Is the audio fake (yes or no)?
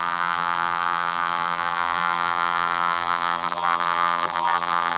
yes